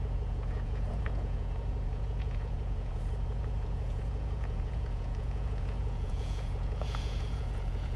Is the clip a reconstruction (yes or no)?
yes